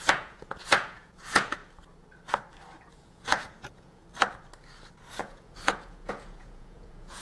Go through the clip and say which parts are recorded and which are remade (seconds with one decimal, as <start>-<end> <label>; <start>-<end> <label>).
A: 0.0-1.6 remade; 1.6-2.9 recorded; 2.9-4.0 remade; 4.0-5.2 recorded; 5.2-7.2 remade

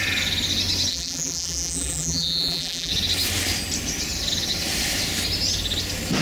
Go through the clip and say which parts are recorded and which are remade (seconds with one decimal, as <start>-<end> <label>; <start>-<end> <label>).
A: 0.0-0.9 recorded; 0.9-2.9 remade; 2.9-6.2 recorded

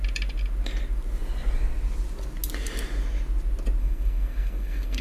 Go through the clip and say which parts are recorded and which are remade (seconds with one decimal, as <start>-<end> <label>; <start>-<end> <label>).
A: 0.0-3.8 recorded; 3.8-5.0 remade

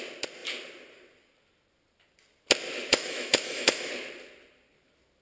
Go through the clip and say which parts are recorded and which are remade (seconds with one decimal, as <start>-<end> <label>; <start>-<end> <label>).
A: 0.0-2.9 recorded; 2.9-3.9 remade; 3.9-5.2 recorded

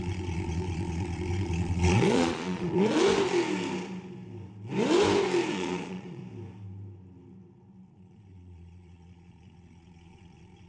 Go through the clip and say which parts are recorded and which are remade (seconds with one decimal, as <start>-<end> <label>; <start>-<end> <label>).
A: 0.0-3.0 remade; 3.0-5.5 recorded; 5.5-6.2 remade; 6.2-7.9 recorded; 7.9-10.7 remade

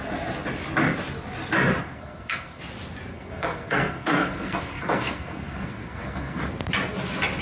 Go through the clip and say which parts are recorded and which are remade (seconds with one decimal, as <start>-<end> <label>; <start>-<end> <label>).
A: 0.0-1.8 recorded; 1.8-2.6 remade; 2.6-3.1 recorded; 3.1-6.5 remade; 6.5-7.4 recorded